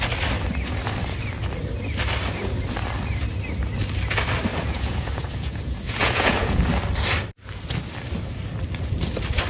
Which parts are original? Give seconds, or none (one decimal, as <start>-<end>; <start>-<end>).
0.0-4.5; 6.6-9.5